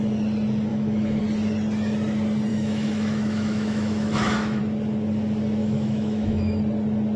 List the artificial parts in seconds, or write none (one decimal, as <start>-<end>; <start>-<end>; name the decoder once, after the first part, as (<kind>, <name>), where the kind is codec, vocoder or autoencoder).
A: 0.7-1.2 (autoencoder, DAC-VAE); 2.5-4.6; 5.6-6.6